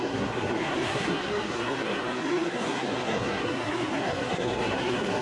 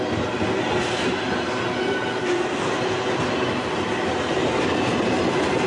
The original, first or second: second